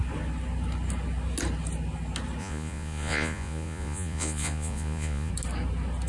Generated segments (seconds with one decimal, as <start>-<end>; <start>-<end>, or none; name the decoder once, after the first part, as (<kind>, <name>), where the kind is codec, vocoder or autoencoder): 2.4-5.3 (vocoder, Vocos)